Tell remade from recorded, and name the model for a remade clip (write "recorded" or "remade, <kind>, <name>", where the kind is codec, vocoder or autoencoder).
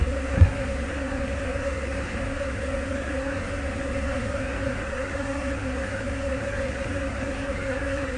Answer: remade, codec, SNAC